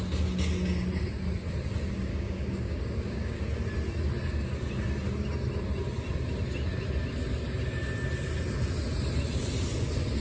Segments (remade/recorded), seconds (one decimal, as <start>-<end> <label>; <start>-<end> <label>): 0.0-2.1 recorded; 2.1-3.4 remade; 3.4-10.2 recorded